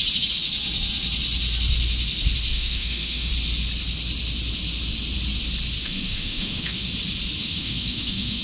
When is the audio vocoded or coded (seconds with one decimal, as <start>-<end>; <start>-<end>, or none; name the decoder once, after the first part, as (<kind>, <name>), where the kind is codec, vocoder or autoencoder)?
2.5-3.3 (autoencoder, DAC-VAE); 5.8-6.9; 7.4-8.4